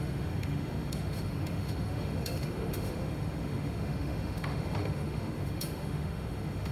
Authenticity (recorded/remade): remade